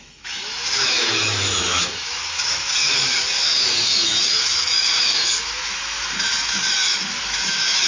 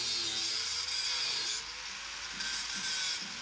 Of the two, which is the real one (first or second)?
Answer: second